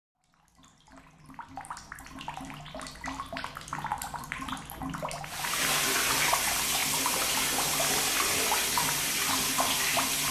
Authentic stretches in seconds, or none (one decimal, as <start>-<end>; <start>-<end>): 0.0-3.9; 4.5-10.3